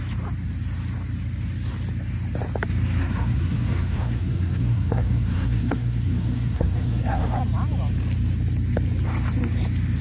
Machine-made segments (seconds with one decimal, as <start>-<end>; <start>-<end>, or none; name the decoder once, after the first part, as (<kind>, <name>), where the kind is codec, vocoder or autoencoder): 3.0-7.4 (codec, SNAC)